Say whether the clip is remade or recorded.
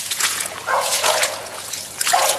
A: remade